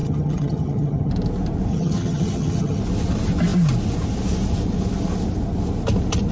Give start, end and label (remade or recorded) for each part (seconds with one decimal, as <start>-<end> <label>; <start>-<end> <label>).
0.0-1.1 remade; 1.1-1.7 recorded; 1.7-2.8 remade; 2.8-6.3 recorded